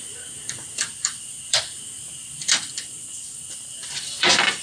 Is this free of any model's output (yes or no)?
no